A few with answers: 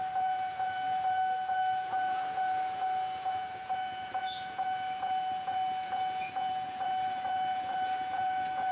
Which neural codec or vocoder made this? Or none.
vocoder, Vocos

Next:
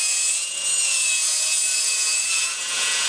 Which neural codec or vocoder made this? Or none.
vocoder, Vocos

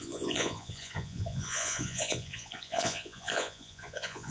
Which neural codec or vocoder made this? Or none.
vocoder, Vocos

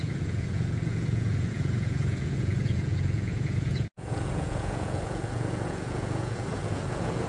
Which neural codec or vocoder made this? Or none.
vocoder, Vocos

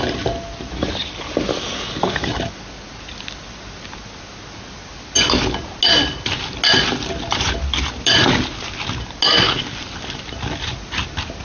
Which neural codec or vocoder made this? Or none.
none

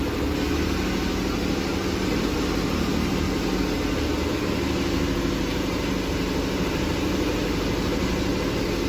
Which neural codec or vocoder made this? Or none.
none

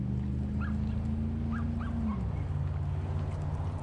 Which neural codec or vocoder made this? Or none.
none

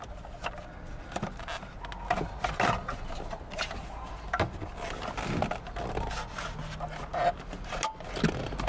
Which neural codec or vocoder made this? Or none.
none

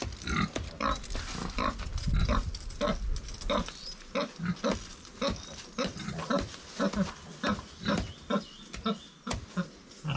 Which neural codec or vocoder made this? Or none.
none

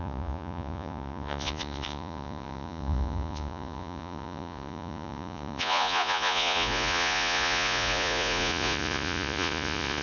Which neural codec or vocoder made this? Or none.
vocoder, Vocos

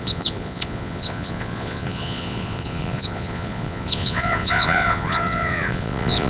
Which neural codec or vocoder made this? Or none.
vocoder, Vocos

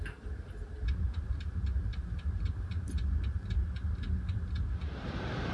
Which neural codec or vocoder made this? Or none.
none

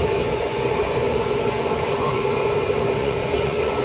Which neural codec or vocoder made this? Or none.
vocoder, Vocos